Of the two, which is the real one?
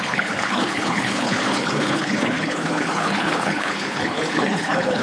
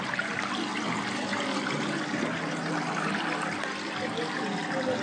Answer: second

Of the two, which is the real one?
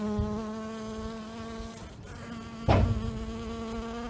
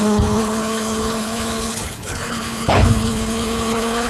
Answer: first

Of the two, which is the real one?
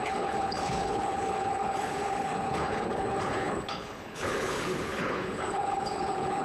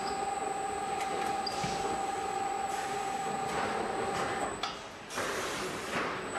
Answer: second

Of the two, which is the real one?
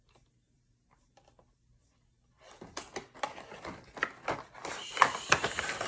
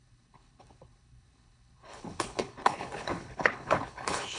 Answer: first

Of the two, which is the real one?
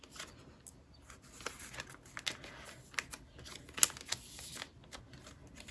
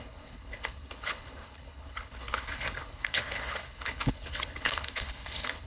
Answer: first